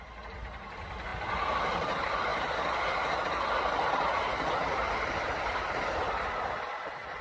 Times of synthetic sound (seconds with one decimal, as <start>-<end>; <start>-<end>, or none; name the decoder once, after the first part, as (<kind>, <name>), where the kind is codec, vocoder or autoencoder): none